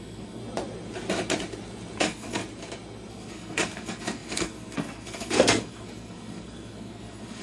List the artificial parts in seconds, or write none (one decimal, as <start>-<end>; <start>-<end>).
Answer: 0.0-0.4; 2.0-2.4; 3.1-7.4